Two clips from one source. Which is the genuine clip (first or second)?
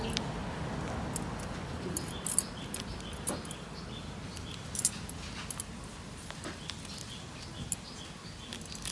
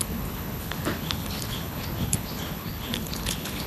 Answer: first